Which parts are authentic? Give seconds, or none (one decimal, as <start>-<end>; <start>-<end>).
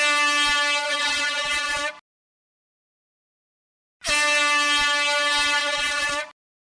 0.0-0.8; 1.9-5.6; 6.3-6.8